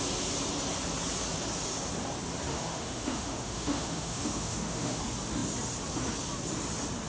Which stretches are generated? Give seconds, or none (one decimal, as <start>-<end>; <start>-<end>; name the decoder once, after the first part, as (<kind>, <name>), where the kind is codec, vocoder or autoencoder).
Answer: 2.5-5.0 (autoencoder, DAC-VAE)